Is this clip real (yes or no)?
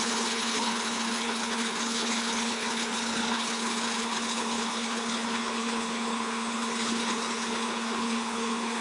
no